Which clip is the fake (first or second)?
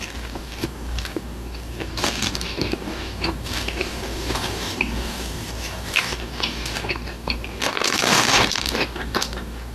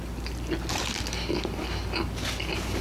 first